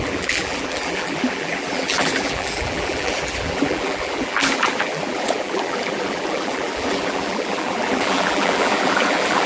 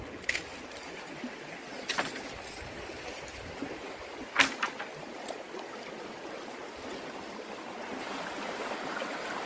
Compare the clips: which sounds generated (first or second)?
first